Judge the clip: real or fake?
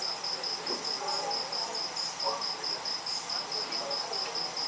real